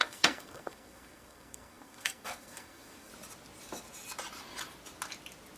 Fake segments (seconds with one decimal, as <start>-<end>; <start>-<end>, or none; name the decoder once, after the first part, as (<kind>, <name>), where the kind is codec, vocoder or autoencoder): 0.0-3.1 (codec, SNAC)

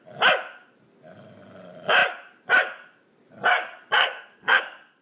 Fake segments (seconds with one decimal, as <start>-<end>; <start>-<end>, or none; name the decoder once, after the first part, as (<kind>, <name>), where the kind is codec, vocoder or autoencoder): 4.0-4.6 (codec, SNAC)